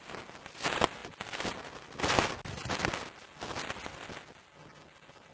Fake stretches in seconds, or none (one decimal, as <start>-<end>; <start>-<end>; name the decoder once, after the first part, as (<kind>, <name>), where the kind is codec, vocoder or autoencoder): none